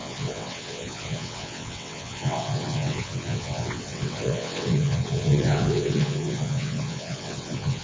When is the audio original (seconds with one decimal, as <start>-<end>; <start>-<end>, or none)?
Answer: none